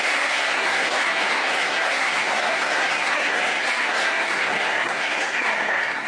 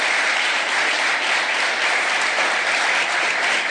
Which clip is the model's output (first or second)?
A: first